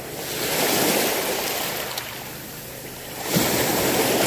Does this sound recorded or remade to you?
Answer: recorded